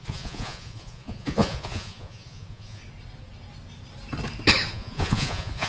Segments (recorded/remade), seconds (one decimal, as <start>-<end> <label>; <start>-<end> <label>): 0.0-2.8 remade; 2.8-4.7 recorded; 4.7-5.7 remade